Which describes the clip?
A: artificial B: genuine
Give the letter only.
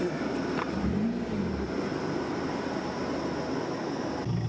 B